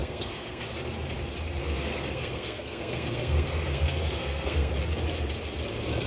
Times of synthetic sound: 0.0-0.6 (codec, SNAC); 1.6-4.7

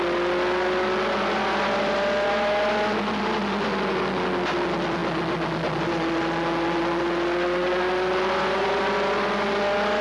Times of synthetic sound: none